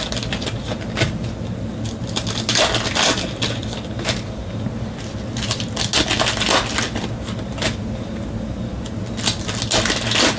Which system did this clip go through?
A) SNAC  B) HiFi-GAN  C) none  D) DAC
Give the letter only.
C